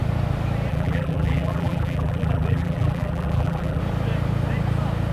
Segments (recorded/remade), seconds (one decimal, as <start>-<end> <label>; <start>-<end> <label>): 0.0-0.7 recorded; 0.7-3.8 remade; 3.8-5.1 recorded